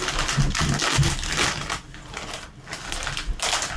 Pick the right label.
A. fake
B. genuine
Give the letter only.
B